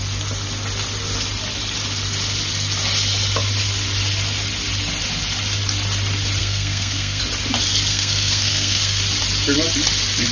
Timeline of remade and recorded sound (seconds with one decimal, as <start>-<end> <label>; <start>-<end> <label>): 0.0-6.4 recorded; 6.4-7.2 remade; 7.2-7.9 recorded; 7.9-9.0 remade; 9.0-10.3 recorded